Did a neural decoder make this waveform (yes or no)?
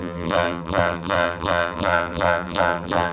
yes